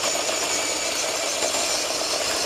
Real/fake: real